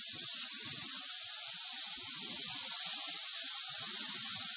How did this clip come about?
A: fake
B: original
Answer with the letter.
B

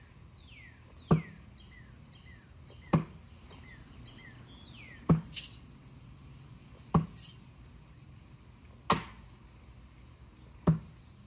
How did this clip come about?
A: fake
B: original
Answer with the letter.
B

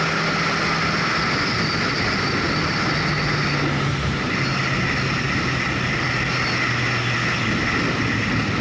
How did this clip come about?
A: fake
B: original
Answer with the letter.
B